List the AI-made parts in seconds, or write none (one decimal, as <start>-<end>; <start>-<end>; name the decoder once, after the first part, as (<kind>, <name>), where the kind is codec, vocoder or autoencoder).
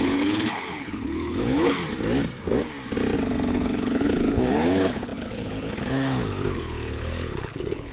0.0-1.8 (codec, HILCodec); 3.5-7.9